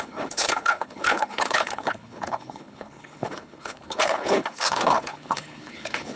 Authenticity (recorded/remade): remade